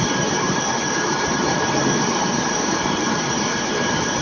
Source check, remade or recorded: remade